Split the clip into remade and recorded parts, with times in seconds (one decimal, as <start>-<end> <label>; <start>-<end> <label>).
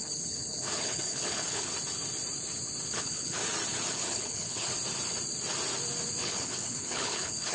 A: 0.0-1.7 remade; 1.7-2.9 recorded; 2.9-3.4 remade; 3.4-3.9 recorded; 3.9-4.7 remade; 4.7-6.2 recorded; 6.2-7.5 remade